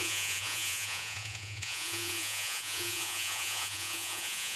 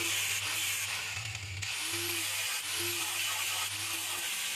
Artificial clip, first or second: first